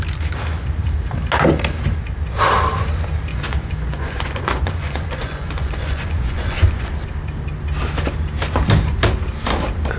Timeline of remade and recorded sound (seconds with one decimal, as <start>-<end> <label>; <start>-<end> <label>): 0.0-3.3 recorded; 3.3-6.9 remade; 6.9-10.0 recorded